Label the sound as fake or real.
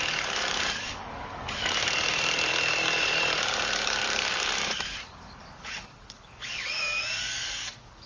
fake